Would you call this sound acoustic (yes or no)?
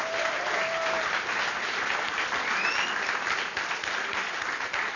no